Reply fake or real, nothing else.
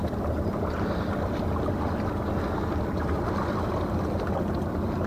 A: real